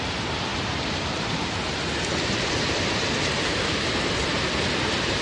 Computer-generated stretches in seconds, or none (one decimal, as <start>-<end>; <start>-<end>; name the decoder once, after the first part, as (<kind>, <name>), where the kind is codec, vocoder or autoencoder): 0.5-3.6 (vocoder, BigVGAN v2)